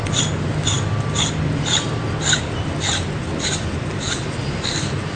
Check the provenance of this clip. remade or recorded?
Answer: recorded